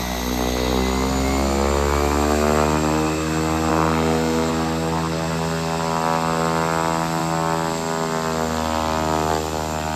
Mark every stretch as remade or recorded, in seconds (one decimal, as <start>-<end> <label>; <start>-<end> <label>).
0.0-3.7 recorded; 3.7-4.5 remade; 4.5-10.0 recorded